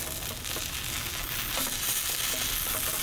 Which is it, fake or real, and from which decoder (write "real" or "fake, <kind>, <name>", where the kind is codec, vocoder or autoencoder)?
real